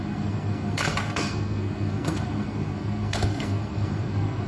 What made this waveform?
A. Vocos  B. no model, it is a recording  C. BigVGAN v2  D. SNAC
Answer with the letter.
D